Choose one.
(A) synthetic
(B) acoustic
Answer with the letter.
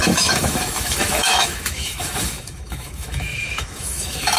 A